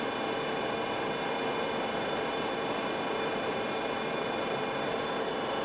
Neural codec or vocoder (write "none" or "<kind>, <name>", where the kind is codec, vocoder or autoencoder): vocoder, BigVGAN v2